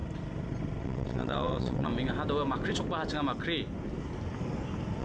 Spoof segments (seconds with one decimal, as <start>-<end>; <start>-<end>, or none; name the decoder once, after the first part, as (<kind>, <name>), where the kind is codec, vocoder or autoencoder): 0.8-1.9 (vocoder, WaveNeXt)